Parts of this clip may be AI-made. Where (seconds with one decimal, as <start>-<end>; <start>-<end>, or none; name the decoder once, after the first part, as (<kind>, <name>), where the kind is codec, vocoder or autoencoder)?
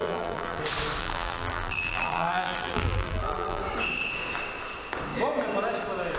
0.0-0.6 (vocoder, BigVGAN v2); 1.0-3.6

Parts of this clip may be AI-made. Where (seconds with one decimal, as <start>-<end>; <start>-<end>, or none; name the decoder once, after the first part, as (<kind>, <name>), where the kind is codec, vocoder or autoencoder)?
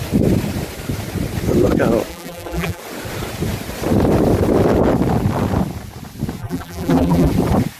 2.1-2.8 (vocoder, BigVGAN v2); 6.4-7.3